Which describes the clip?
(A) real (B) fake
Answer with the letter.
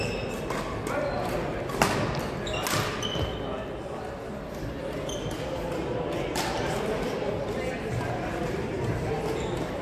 A